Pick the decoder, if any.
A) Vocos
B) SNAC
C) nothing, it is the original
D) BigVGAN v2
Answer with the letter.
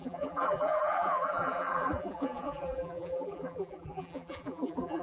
D